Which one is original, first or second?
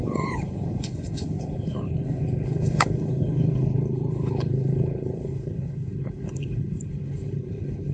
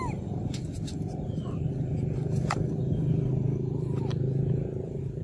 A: second